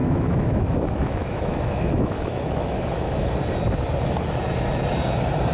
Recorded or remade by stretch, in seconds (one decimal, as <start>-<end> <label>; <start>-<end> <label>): 0.0-3.3 remade; 3.3-5.5 recorded